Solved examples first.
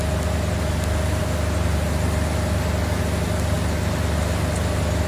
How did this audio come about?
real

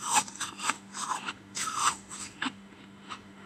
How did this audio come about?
fake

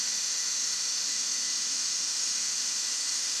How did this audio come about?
fake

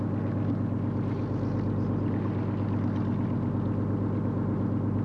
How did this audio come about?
real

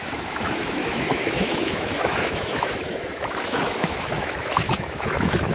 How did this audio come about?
fake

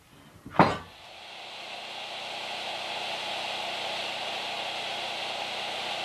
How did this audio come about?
real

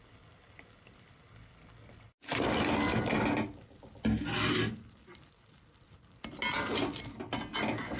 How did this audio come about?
real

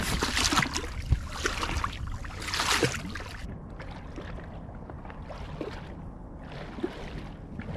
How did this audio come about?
real